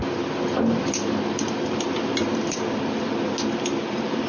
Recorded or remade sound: recorded